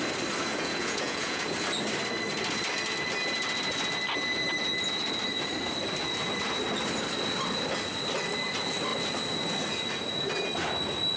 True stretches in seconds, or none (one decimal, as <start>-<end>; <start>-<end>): 0.0-0.5; 1.4-11.2